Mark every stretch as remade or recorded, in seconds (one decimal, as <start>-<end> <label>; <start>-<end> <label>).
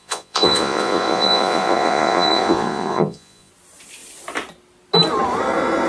0.0-3.5 remade; 3.5-5.9 recorded